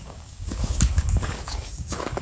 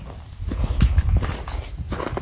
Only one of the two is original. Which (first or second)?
second